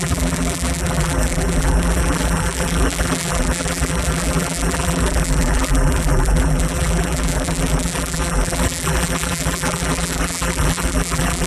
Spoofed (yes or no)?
yes